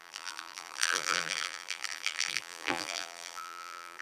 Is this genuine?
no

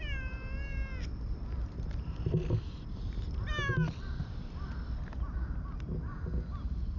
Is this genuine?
yes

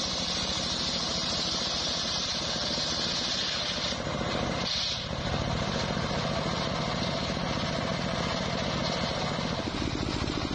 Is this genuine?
yes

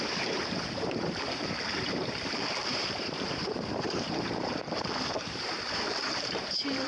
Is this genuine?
no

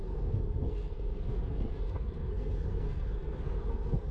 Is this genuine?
no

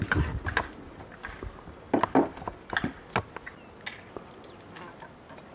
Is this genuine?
yes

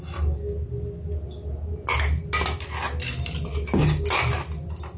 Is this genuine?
yes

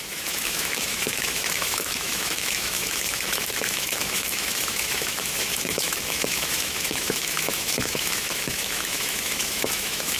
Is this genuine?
no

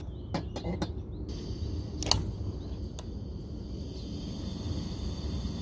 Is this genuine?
yes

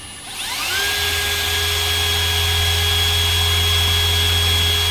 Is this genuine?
yes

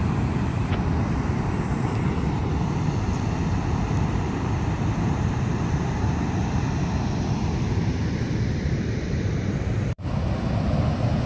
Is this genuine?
no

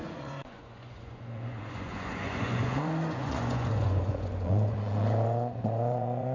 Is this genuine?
no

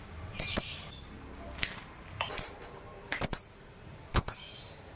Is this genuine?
no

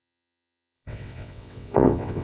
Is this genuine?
no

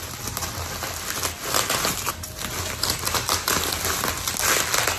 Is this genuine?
yes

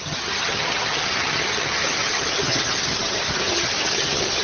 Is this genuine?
no